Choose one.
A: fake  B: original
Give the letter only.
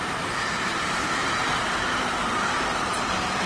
B